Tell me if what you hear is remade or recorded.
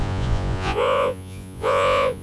remade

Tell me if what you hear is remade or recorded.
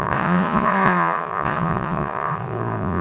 remade